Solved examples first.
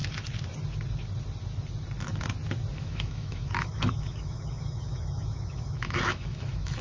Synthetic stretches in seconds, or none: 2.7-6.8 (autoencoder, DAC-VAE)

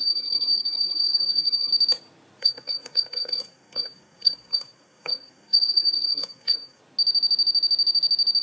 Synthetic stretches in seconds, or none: 0.0-1.7 (codec, SNAC); 2.4-6.8

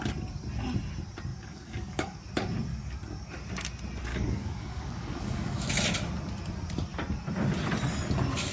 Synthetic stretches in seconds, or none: 1.3-2.2 (codec, DAC); 2.7-3.3; 4.1-5.7

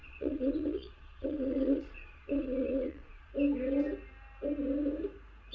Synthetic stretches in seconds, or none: 0.0-3.3 (vocoder, Vocos)